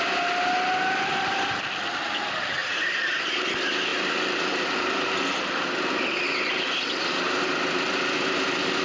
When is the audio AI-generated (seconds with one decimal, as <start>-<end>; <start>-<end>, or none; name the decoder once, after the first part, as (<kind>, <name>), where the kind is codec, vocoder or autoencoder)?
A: none

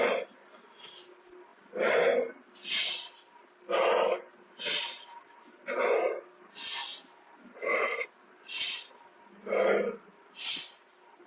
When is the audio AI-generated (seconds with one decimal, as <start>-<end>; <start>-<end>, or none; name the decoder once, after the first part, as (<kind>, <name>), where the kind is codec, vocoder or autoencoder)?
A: 6.8-8.8 (vocoder, BigVGAN v2)